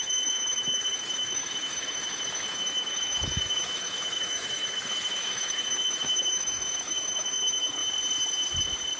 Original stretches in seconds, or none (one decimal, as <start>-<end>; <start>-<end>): 7.8-9.0